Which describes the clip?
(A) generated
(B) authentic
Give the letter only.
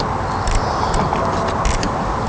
B